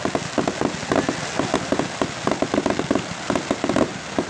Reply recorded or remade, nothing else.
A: recorded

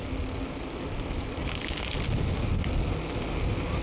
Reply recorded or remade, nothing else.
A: recorded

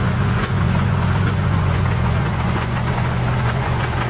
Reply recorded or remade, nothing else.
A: remade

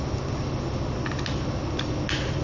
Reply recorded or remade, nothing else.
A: recorded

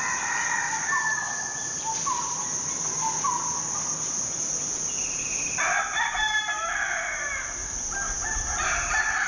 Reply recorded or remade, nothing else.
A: recorded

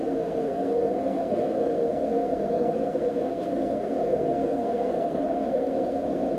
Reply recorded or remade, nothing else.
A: remade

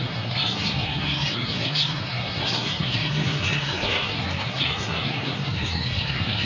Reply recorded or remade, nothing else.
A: remade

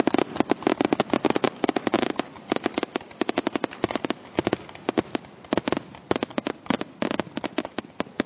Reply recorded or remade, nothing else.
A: recorded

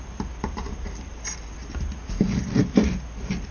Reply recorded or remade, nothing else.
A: recorded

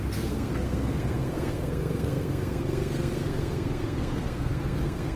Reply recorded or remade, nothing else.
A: remade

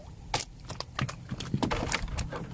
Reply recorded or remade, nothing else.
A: recorded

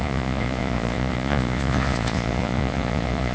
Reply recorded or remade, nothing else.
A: remade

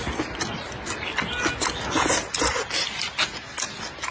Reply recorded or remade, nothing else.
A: recorded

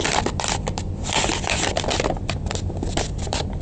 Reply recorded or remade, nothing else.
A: remade